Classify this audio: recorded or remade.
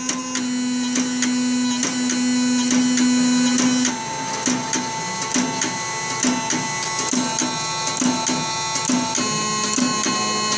recorded